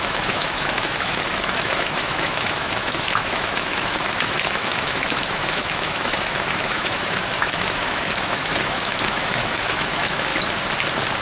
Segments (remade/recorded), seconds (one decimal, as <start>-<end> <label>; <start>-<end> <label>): 0.0-10.3 remade; 10.3-11.2 recorded